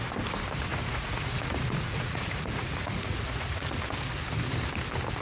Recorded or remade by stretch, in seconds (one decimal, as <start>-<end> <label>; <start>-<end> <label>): 0.0-0.7 recorded; 0.7-3.8 remade; 3.8-5.2 recorded